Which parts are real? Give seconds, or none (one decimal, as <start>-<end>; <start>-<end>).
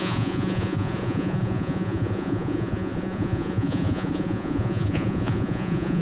none